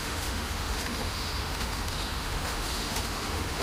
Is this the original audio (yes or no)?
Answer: no